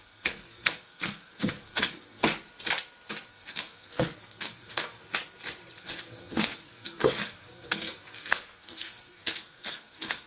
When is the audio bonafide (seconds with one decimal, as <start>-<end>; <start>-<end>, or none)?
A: 2.2-3.3; 5.0-5.8